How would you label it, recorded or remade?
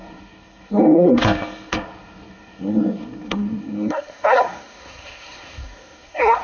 remade